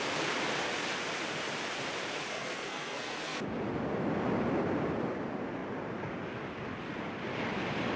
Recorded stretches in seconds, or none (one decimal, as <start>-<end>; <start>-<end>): 0.0-2.3; 3.4-8.0